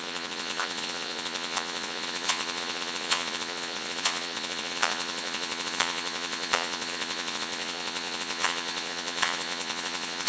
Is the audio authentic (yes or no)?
no